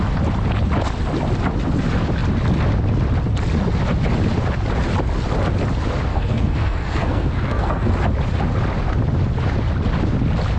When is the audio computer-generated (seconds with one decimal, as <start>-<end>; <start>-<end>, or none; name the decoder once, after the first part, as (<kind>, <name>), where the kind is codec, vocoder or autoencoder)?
6.1-7.9 (codec, SNAC)